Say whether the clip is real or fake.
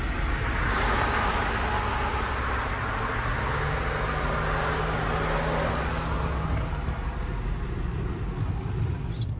real